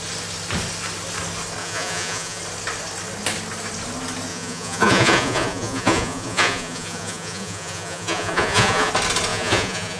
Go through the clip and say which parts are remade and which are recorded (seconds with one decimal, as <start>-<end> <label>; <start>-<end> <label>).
0.0-1.6 recorded; 1.6-2.4 remade; 2.4-4.3 recorded; 4.3-8.9 remade; 8.9-9.3 recorded; 9.3-10.0 remade